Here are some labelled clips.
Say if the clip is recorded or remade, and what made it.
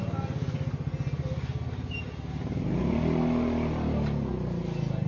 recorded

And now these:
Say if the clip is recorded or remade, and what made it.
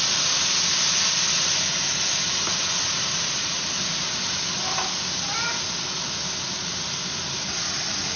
recorded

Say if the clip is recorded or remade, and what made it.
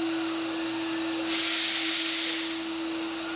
recorded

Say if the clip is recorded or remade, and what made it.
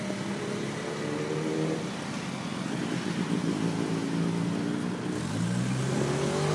recorded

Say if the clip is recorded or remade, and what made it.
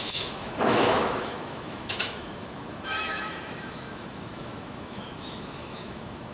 remade, autoencoder, DAC-VAE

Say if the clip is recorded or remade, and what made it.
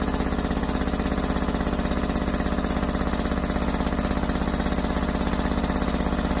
recorded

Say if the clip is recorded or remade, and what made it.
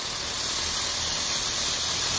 recorded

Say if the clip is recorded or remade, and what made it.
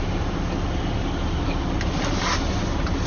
recorded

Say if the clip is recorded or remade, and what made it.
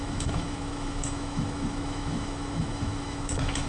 remade, autoencoder, DAC-VAE